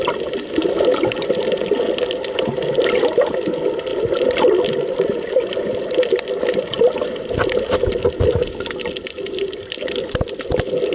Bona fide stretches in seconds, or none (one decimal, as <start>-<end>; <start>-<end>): 0.0-10.9